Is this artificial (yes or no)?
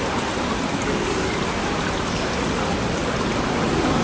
no